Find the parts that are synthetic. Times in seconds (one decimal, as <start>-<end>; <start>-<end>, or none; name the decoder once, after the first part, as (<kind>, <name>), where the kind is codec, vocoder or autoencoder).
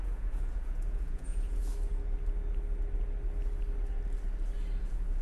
0.0-1.7 (vocoder, Vocos); 4.8-5.2